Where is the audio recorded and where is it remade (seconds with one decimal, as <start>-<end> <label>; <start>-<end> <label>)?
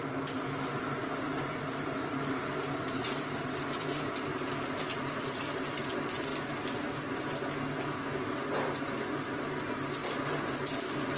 0.0-1.3 recorded; 1.3-5.4 remade; 5.4-11.2 recorded